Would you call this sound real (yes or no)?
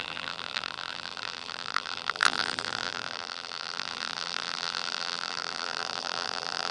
no